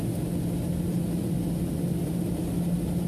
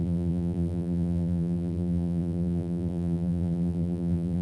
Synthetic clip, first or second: second